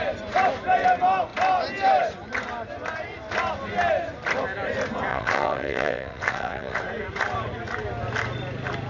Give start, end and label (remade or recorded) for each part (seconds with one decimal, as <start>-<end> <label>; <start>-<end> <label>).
0.0-5.1 recorded; 5.1-6.8 remade; 6.8-8.9 recorded